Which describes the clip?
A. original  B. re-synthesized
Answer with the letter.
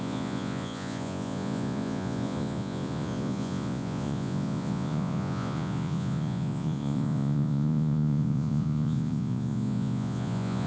B